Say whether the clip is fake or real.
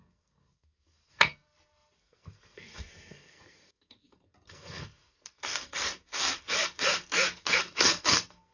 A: fake